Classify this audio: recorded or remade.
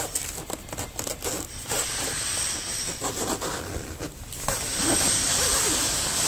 recorded